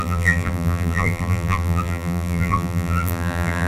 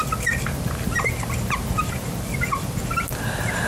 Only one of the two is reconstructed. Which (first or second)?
first